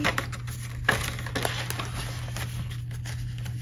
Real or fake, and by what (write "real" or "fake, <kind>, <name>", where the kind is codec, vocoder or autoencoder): real